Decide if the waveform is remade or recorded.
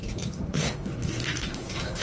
remade